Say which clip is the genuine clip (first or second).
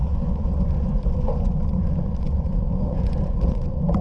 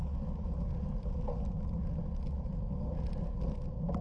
second